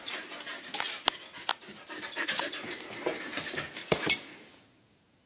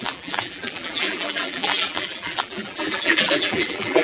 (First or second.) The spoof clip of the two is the second